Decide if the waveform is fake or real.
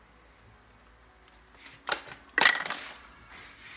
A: real